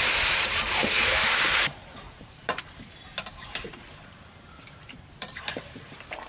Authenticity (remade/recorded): remade